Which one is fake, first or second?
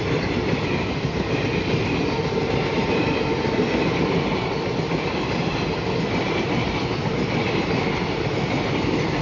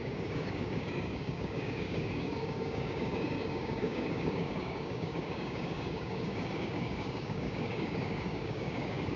second